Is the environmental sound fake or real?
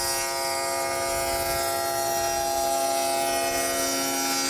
real